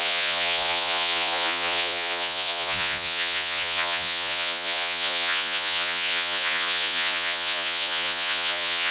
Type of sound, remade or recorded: remade